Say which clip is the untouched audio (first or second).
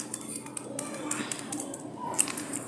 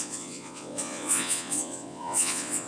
first